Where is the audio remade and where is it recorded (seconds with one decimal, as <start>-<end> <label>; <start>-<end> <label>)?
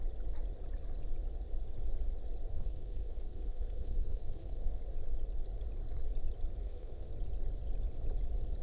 0.0-2.5 recorded; 2.5-4.8 remade; 4.8-6.6 recorded; 6.6-7.1 remade; 7.1-8.6 recorded